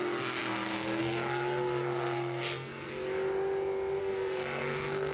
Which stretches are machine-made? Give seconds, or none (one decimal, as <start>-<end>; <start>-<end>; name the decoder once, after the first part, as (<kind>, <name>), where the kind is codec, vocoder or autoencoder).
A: 0.0-2.9 (codec, SNAC); 4.0-5.1